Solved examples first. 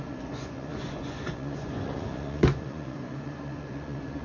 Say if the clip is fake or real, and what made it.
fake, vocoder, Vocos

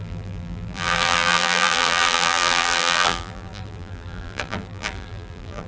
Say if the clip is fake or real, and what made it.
fake, vocoder, BigVGAN v2